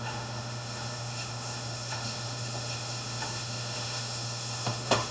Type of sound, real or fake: fake